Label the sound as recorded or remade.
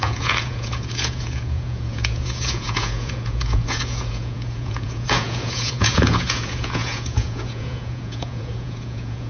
remade